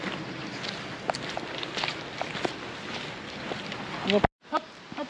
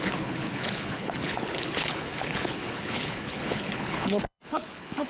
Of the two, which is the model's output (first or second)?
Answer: second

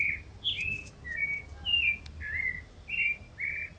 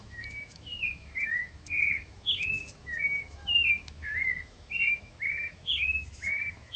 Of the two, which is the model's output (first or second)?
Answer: second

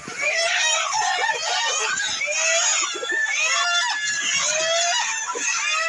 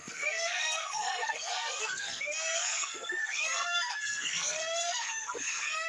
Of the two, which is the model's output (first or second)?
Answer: second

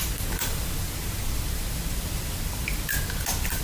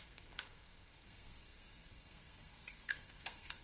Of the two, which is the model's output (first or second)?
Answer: second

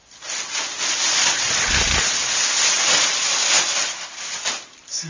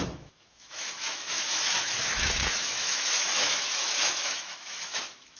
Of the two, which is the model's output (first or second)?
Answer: second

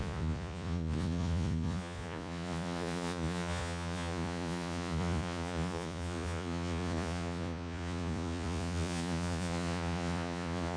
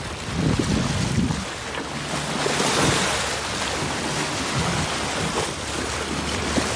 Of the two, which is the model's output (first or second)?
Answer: first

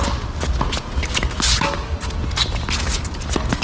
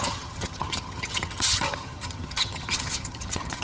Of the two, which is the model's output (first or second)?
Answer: second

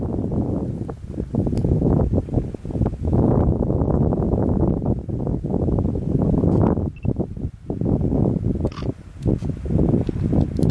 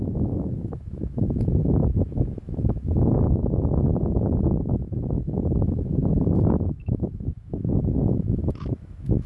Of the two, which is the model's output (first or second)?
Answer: second